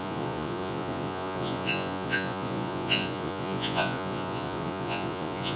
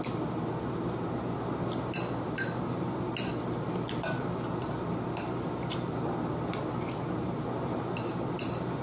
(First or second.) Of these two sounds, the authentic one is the second